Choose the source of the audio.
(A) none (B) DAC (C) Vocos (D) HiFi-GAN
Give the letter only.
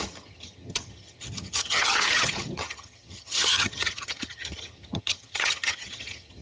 D